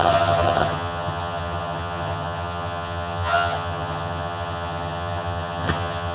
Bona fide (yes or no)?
no